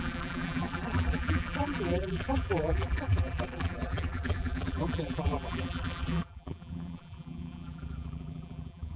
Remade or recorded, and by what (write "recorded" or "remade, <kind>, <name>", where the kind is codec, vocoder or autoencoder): remade, vocoder, BigVGAN v2